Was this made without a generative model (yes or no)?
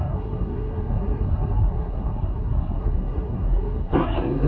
no